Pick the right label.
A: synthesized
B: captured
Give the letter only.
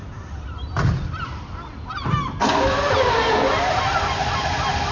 B